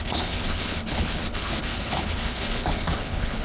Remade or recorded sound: remade